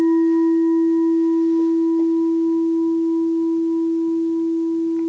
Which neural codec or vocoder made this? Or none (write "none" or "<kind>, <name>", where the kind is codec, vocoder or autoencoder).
none